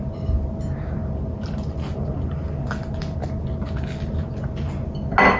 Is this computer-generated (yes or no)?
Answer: no